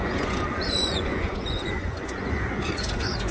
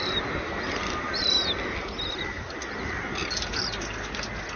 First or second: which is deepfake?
first